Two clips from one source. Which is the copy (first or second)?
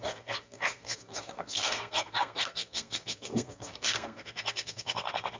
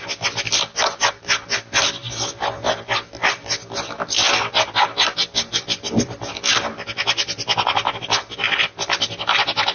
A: first